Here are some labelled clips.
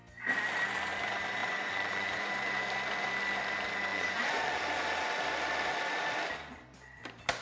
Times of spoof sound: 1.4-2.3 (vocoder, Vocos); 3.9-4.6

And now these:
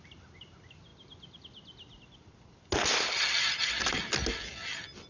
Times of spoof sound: none

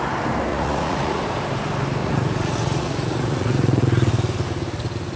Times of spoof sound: 0.5-1.2 (vocoder, Vocos); 2.0-4.1

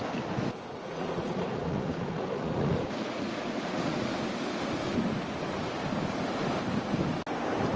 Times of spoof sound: 0.8-4.1 (vocoder, Vocos)

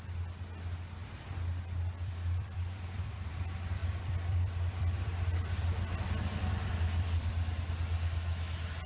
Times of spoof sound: 1.0-3.3 (vocoder, BigVGAN v2); 3.8-7.3

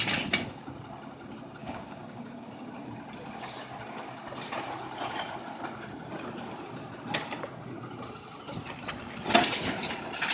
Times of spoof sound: 1.6-2.7 (codec, DAC)

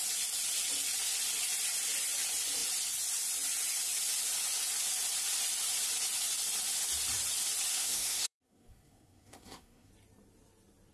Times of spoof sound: 7.7-9.9 (codec, SNAC)